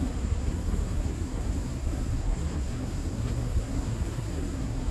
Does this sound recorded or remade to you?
remade